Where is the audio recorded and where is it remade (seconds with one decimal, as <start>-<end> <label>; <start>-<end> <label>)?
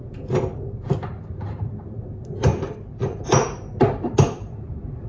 0.0-5.1 recorded